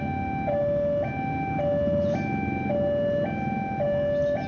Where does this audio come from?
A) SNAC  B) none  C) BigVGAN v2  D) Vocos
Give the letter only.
B